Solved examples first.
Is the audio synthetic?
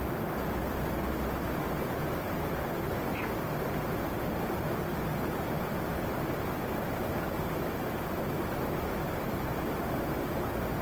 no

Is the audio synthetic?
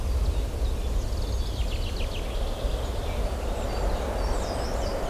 no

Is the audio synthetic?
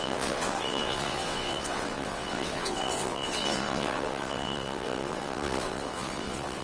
yes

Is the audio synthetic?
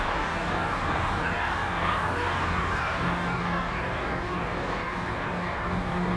yes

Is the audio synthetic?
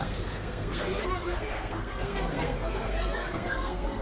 yes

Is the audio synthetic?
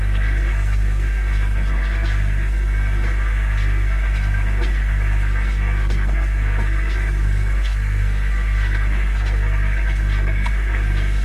yes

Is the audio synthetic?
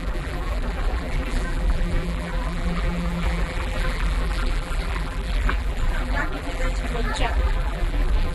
yes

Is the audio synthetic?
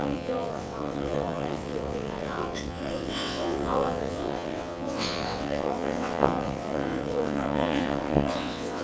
yes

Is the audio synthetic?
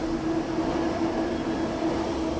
no